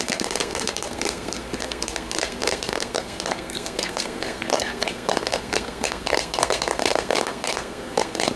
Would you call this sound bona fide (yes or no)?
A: no